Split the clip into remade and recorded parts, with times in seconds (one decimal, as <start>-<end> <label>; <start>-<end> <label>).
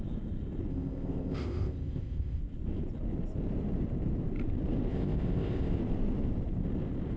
0.0-0.7 recorded; 0.7-2.4 remade; 2.4-4.9 recorded; 4.9-5.8 remade; 5.8-7.2 recorded